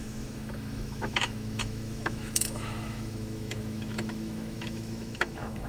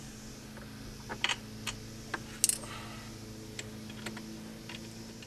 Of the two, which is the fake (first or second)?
first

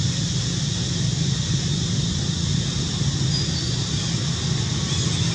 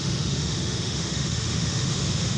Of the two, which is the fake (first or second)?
second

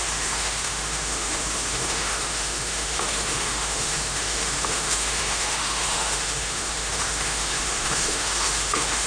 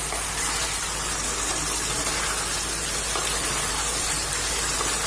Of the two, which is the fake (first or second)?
first